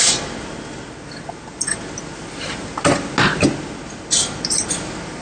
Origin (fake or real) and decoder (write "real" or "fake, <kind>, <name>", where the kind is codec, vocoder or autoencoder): real